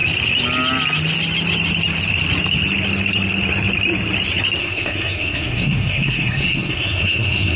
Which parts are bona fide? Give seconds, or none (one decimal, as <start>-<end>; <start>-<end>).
0.0-4.6